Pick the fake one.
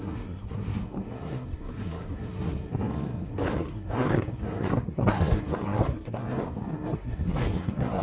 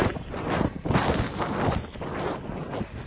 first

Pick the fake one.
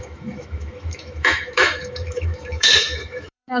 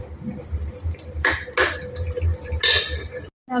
first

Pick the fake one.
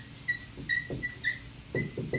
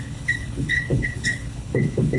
second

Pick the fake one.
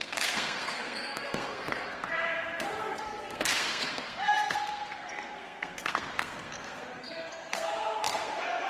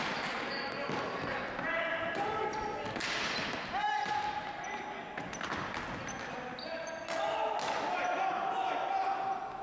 first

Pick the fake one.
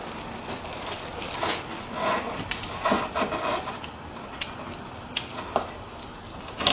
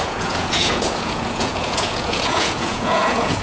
second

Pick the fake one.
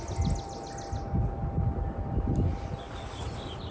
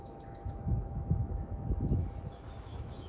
second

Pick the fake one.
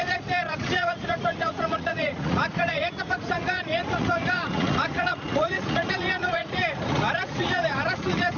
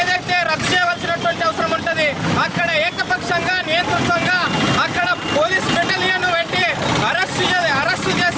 first